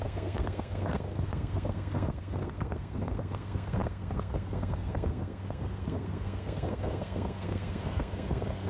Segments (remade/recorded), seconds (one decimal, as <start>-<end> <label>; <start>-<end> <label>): 0.0-8.7 remade